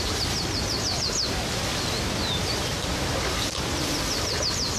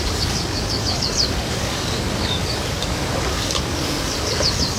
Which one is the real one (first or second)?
first